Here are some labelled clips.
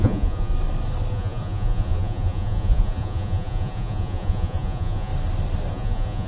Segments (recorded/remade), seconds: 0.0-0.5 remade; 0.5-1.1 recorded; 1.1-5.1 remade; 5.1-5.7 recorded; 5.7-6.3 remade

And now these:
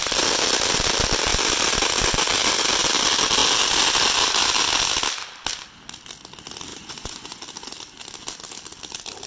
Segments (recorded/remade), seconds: 0.0-6.7 recorded; 6.7-7.4 remade; 7.4-9.3 recorded

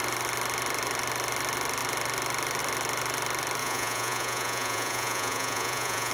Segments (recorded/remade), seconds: 0.0-3.6 recorded; 3.6-6.1 remade

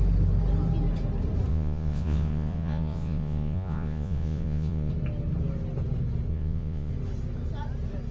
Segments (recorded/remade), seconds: 0.0-1.5 recorded; 1.5-4.9 remade; 4.9-6.3 recorded; 6.3-6.9 remade; 6.9-8.1 recorded

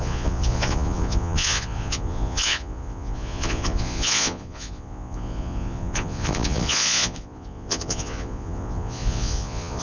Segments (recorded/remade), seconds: 0.0-9.8 remade

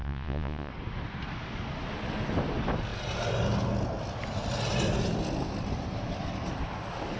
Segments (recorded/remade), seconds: 0.0-0.7 remade; 0.7-7.2 recorded

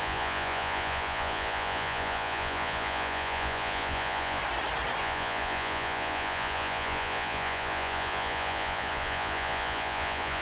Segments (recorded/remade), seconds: 0.0-4.4 remade; 4.4-5.0 recorded; 5.0-10.4 remade